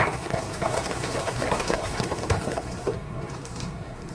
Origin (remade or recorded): remade